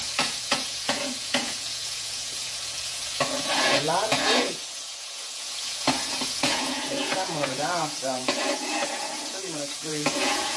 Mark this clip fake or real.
fake